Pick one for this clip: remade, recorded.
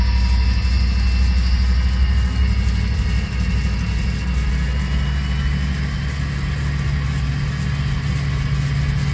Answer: recorded